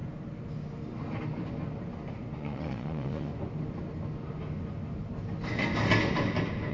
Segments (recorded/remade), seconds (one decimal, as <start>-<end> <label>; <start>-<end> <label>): 0.0-2.4 recorded; 2.4-3.3 remade; 3.3-6.7 recorded